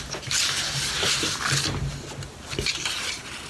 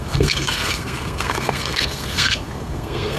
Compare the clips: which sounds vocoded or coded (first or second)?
second